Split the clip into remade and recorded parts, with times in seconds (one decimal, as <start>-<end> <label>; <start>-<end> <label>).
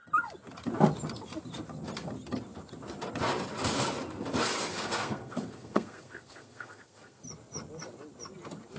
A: 0.0-4.7 recorded; 4.7-7.2 remade; 7.2-8.8 recorded